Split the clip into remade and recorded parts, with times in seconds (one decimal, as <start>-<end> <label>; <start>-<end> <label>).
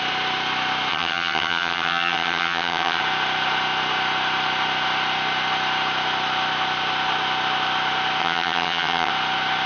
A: 0.0-0.9 recorded; 0.9-3.0 remade; 3.0-8.2 recorded; 8.2-9.1 remade; 9.1-9.7 recorded